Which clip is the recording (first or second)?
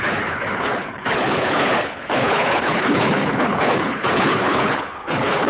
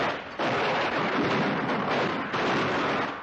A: second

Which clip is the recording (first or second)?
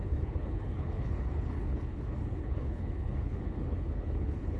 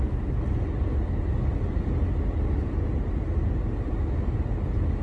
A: second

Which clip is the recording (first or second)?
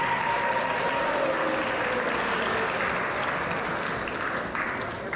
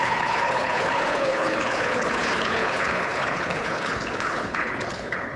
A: first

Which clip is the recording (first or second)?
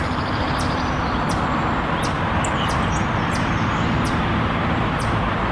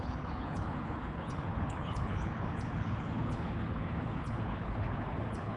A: first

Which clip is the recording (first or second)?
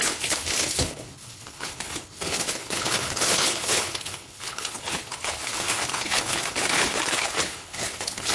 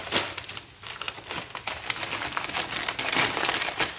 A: second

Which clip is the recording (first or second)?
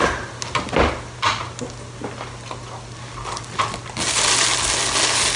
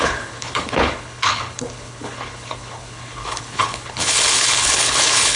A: first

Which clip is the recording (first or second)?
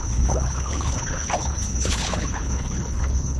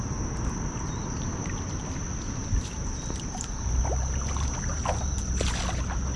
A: second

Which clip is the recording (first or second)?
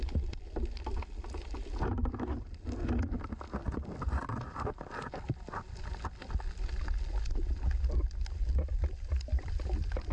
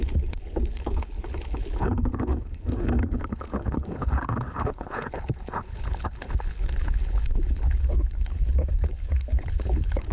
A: first